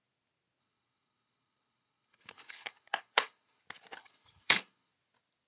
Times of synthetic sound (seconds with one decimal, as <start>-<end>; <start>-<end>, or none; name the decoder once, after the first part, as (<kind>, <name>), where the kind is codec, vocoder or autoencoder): 0.6-3.6 (codec, HILCodec); 4.0-4.9

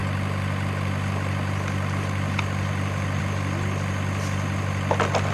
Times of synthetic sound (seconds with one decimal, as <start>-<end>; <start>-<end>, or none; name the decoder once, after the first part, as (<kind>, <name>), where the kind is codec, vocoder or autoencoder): none

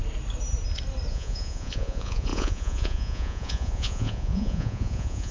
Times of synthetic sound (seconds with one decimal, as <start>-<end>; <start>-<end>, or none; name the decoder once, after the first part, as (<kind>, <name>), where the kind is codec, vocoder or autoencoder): 1.1-5.3 (vocoder, Vocos)

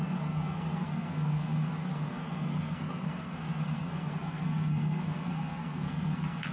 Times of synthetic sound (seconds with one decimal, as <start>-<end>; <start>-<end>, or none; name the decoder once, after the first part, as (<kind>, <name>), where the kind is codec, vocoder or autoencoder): 0.0-6.5 (codec, SNAC)

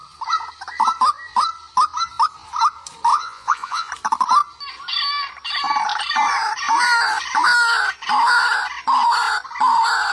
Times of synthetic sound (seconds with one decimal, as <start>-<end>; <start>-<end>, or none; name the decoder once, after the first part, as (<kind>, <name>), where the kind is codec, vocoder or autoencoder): 3.1-3.9 (vocoder, Vocos)

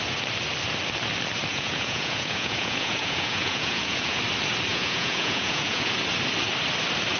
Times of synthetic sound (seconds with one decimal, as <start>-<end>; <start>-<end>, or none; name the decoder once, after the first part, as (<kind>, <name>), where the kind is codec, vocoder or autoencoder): 1.5-4.2 (vocoder, Vocos); 4.7-5.9